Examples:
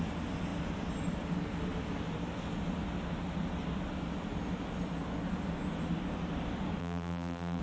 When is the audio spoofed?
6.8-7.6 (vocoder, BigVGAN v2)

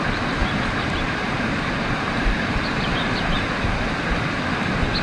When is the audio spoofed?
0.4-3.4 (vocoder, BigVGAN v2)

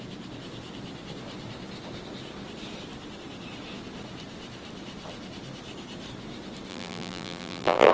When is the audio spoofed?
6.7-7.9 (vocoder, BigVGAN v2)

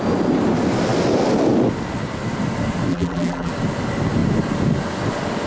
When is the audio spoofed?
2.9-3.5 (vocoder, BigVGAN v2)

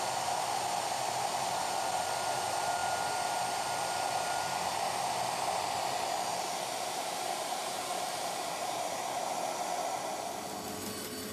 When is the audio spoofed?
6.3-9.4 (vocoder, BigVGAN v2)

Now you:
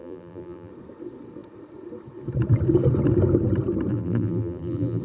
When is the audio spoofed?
0.0-0.7 (vocoder, BigVGAN v2); 3.9-5.0